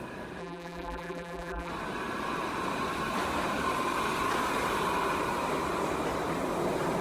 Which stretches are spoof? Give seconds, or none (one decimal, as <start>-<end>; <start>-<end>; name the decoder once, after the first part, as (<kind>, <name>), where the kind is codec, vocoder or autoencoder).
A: 0.4-1.7 (vocoder, BigVGAN v2)